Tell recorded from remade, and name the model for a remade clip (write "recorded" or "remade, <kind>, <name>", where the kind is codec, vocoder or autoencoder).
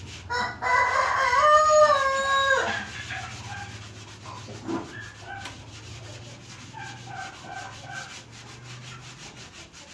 recorded